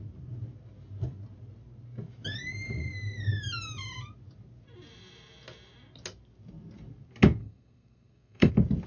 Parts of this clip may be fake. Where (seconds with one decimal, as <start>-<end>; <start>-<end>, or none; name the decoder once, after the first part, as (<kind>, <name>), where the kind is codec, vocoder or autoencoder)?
7.4-8.5 (codec, SNAC)